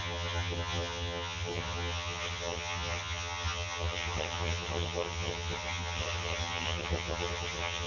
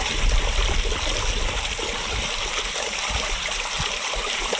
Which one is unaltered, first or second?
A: second